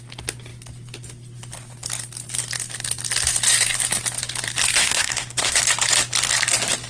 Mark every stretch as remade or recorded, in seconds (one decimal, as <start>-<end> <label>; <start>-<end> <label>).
0.0-4.8 recorded; 4.8-5.6 remade; 5.6-6.9 recorded